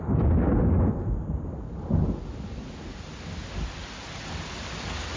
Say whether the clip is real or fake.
real